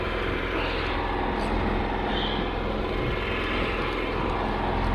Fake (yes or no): no